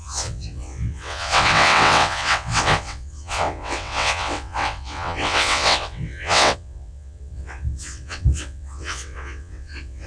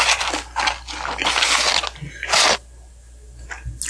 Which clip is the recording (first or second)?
second